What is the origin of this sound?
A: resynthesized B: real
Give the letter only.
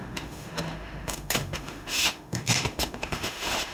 A